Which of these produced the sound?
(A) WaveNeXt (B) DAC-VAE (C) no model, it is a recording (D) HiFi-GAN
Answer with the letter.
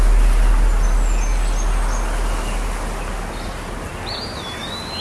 C